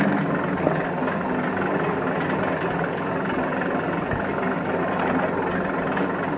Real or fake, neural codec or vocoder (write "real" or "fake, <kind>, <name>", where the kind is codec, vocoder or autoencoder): real